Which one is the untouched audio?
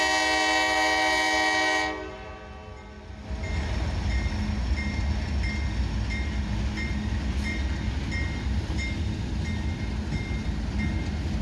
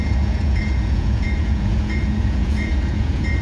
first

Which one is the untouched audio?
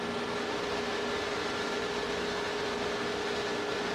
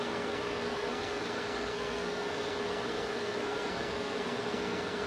first